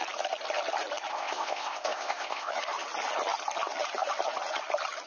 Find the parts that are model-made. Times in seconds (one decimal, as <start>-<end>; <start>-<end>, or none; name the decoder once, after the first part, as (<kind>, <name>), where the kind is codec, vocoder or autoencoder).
1.1-2.5 (codec, ZipCodec)